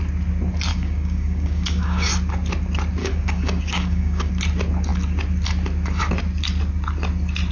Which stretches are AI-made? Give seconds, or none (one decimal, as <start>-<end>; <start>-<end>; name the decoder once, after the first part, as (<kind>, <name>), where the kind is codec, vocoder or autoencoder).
0.7-2.1 (codec, DAC); 3.0-4.3